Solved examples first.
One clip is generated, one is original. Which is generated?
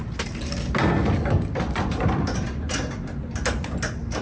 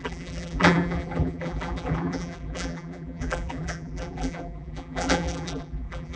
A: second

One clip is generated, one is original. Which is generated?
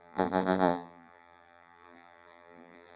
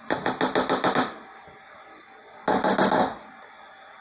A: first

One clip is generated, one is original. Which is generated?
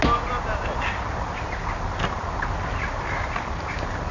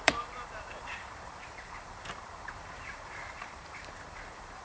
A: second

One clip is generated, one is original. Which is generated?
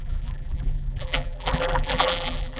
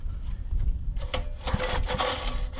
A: first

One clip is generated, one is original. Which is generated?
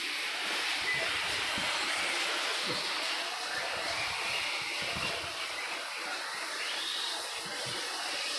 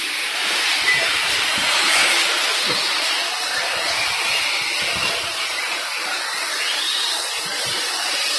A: second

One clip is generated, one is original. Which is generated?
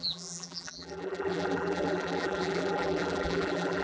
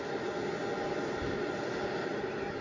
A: first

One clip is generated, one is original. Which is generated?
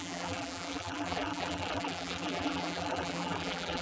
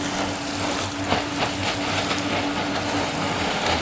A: first